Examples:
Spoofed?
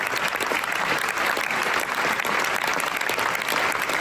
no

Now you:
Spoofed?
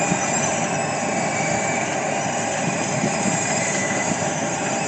yes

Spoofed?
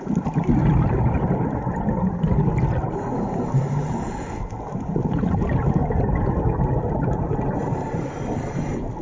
yes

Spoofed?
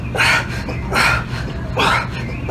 no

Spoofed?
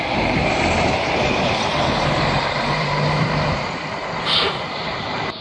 yes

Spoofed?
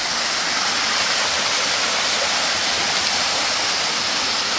no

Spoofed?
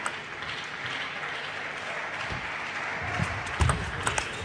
no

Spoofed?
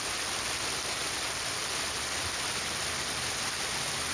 no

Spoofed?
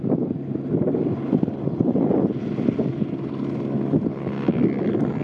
no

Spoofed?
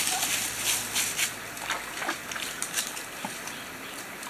no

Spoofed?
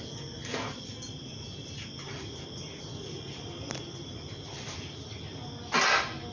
no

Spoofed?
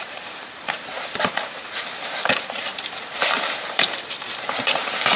yes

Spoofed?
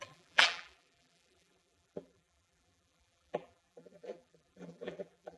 yes